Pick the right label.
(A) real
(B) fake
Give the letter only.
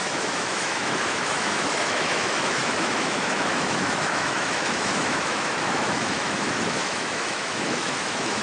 B